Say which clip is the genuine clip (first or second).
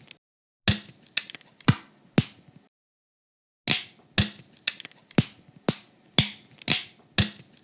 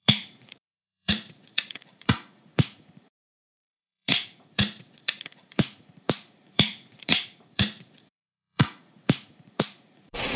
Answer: first